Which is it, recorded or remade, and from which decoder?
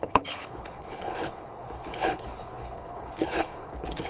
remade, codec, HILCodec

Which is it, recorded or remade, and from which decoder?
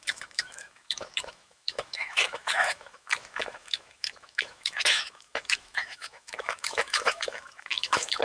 remade, autoencoder, DAC-VAE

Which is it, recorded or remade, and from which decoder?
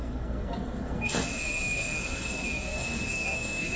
remade, codec, SNAC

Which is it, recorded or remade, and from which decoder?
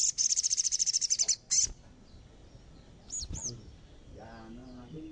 recorded